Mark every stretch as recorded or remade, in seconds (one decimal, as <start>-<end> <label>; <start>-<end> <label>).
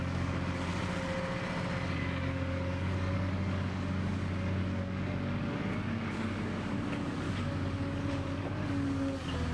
0.0-0.7 remade; 0.7-1.9 recorded; 1.9-9.5 remade